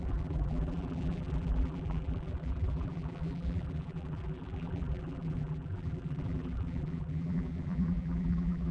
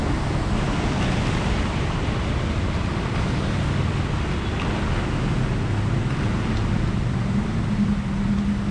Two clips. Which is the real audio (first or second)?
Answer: second